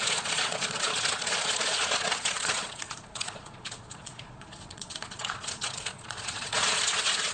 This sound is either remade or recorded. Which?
remade